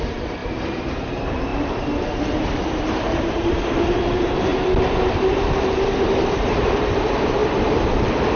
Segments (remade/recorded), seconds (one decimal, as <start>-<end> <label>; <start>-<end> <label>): 0.0-0.4 remade; 0.4-1.1 recorded; 1.1-4.5 remade; 4.5-5.0 recorded; 5.0-8.4 remade